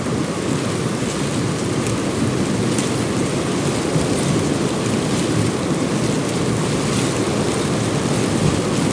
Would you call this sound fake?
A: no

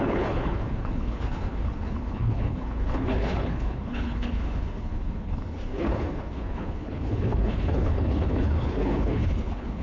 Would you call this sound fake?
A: yes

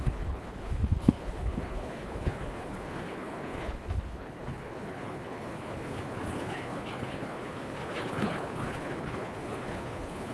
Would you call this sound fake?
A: yes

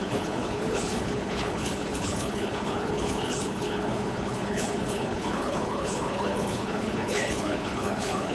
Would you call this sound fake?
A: yes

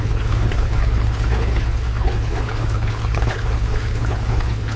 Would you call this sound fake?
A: yes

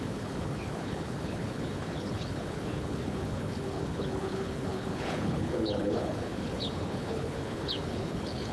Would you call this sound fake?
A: yes